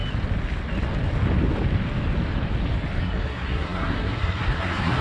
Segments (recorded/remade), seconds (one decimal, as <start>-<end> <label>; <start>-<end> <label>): 0.0-3.0 recorded; 3.0-5.0 remade